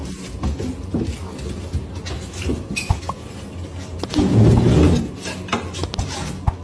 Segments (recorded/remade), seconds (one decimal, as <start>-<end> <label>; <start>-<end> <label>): 0.0-6.6 recorded